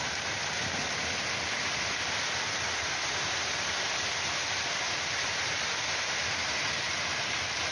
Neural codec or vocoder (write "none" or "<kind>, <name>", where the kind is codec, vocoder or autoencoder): none